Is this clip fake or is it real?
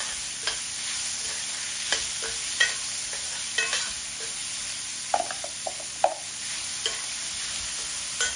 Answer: real